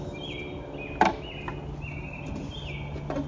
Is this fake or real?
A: real